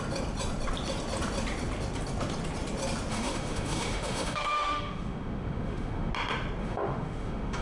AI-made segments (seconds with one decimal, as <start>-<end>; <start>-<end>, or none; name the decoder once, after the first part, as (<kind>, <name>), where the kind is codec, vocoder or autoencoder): 3.1-6.1 (autoencoder, DAC-VAE); 6.6-7.6